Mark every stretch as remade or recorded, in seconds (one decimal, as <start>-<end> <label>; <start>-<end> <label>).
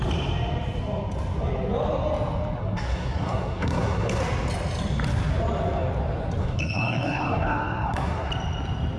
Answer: 0.0-2.6 recorded; 2.6-4.2 remade; 4.2-6.4 recorded; 6.4-8.3 remade; 8.3-9.0 recorded